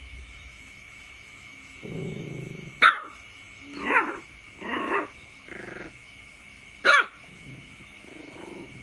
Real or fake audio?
fake